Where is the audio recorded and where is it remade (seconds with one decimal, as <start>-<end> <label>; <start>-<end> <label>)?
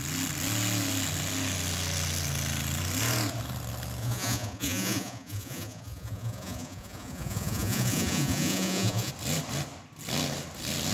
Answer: 0.0-4.0 recorded; 4.0-9.1 remade; 9.1-10.9 recorded